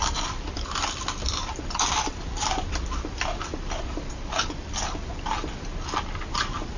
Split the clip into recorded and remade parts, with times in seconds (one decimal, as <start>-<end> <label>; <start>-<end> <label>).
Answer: 0.0-4.1 remade; 4.1-6.8 recorded